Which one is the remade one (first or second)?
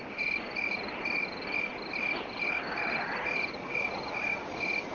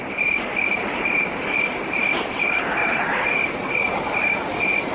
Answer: second